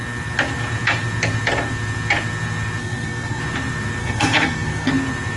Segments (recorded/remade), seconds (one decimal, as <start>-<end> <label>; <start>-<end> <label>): 0.0-2.8 recorded; 2.8-3.4 remade; 3.4-4.0 recorded; 4.0-4.9 remade; 4.9-5.4 recorded

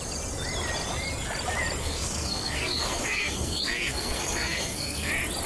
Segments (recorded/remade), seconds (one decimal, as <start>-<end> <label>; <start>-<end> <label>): 0.0-1.8 recorded; 1.8-5.1 remade; 5.1-5.5 recorded

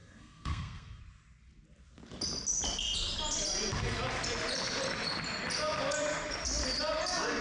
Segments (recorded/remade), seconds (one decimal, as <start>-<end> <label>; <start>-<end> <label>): 0.0-1.0 remade; 1.0-7.4 recorded

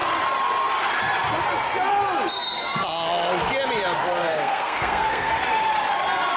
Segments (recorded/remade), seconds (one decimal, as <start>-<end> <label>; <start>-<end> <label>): 0.0-4.2 recorded; 4.2-5.3 remade; 5.3-6.4 recorded